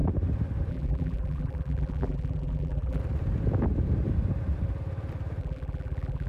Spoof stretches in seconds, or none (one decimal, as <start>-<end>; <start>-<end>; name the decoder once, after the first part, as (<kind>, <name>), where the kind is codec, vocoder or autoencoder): 0.7-3.0 (vocoder, BigVGAN v2); 5.4-6.3